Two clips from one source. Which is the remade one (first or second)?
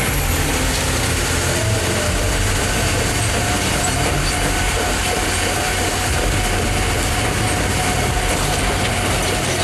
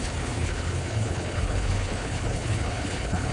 second